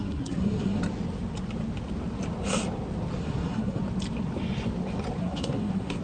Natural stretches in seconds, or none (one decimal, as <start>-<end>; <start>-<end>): 0.8-3.2; 3.8-5.2